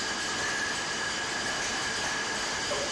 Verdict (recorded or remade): recorded